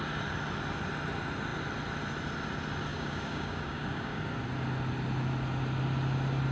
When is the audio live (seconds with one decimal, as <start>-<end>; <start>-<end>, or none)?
0.0-2.9; 4.2-6.5